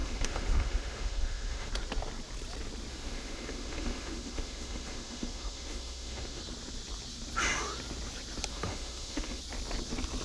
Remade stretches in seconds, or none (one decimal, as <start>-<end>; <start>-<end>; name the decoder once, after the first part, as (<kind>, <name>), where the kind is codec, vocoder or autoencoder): 0.0-1.7 (autoencoder, DAC-VAE); 2.9-6.4; 8.5-9.4